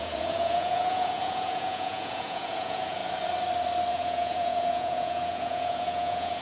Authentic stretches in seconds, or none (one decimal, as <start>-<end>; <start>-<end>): 3.0-3.9